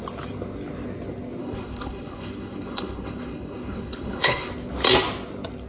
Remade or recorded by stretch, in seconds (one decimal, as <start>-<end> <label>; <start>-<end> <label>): 0.0-1.4 recorded; 1.4-4.5 remade; 4.5-5.7 recorded